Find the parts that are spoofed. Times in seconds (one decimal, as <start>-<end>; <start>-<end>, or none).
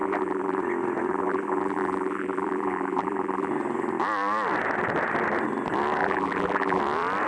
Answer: 0.0-0.6; 1.1-3.5; 6.0-6.8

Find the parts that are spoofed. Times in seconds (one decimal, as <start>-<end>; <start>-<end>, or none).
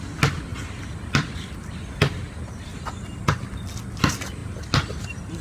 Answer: 2.7-3.3